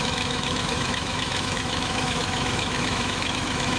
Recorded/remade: remade